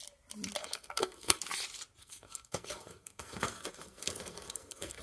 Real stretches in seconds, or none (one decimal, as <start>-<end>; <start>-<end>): 0.0-0.6; 1.4-2.0